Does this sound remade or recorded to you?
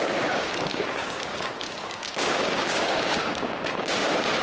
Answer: remade